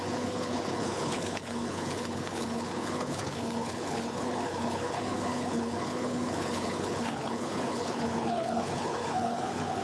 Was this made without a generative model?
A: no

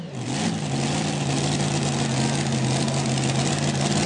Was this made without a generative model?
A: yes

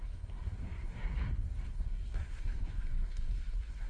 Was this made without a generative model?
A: no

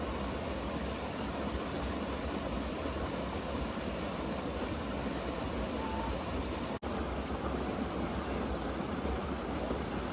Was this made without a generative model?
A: yes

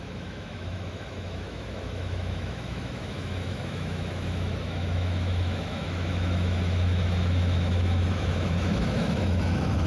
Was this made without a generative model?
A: no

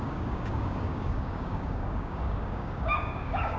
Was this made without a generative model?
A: no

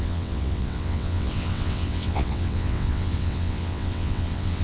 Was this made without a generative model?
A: no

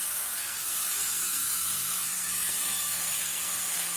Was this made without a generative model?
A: no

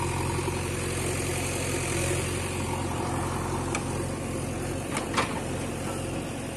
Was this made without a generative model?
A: no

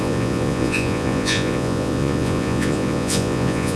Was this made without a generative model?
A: no